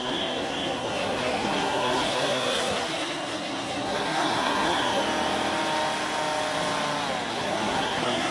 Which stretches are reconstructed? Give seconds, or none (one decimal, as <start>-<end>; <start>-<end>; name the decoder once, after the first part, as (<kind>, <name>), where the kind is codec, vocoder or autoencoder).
0.0-5.0 (codec, SNAC); 7.3-8.3